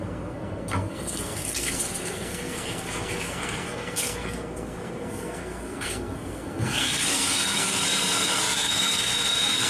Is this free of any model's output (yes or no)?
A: no